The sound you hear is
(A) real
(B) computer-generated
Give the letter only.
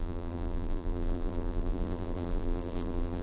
B